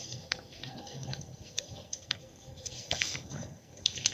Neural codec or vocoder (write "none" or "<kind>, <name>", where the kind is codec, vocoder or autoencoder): codec, SNAC